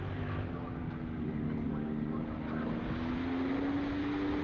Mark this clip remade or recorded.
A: recorded